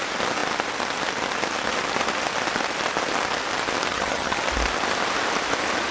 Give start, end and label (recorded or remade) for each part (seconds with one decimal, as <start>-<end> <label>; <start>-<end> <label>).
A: 0.0-3.9 recorded; 3.9-4.4 remade; 4.4-5.9 recorded